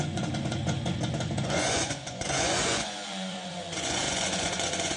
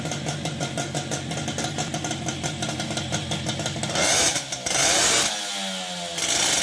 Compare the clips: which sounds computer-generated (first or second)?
first